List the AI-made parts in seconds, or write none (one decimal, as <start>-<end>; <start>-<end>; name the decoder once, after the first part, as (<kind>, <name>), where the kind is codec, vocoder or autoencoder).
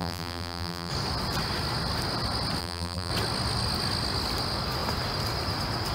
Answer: 0.0-0.9 (vocoder, BigVGAN v2); 2.6-3.1